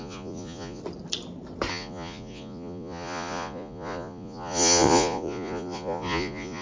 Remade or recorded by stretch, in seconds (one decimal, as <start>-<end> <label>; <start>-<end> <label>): 0.0-0.8 remade; 0.8-1.7 recorded; 1.7-6.6 remade